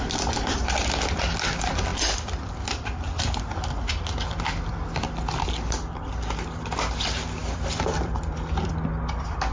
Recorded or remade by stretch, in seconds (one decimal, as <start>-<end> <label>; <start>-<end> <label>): 0.0-7.4 recorded; 7.4-8.7 remade; 8.7-9.5 recorded

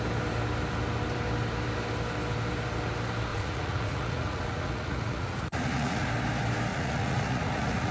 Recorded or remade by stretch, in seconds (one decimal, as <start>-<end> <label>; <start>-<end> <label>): 0.0-3.3 recorded; 3.3-6.1 remade; 6.1-6.7 recorded; 6.7-7.9 remade